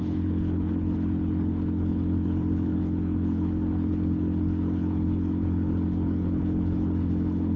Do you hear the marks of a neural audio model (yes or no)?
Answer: yes